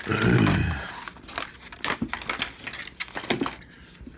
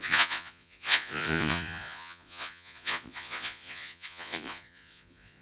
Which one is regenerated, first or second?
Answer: second